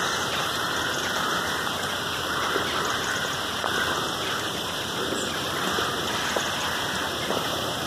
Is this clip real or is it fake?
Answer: fake